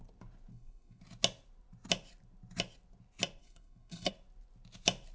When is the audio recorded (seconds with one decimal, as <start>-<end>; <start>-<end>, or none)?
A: 0.0-0.5; 1.0-3.4; 4.1-5.1